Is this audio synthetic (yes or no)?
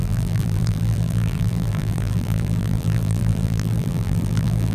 yes